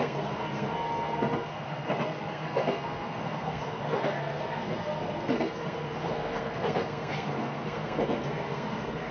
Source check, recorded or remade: remade